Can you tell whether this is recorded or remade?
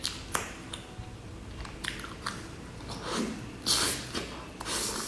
recorded